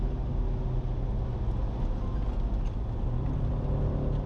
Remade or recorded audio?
recorded